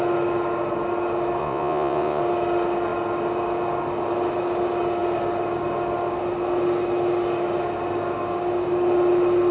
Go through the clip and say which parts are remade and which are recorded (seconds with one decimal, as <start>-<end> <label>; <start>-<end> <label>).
0.0-1.4 recorded; 1.4-2.2 remade; 2.2-9.5 recorded